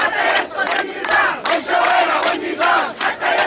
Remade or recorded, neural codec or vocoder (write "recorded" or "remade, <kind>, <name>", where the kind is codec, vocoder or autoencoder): remade, vocoder, WaveNeXt